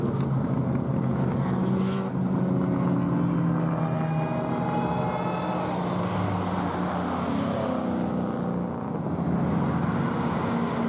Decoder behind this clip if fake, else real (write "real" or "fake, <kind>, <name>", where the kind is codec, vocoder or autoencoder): real